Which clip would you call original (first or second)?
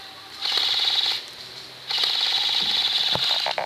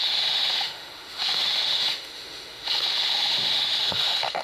first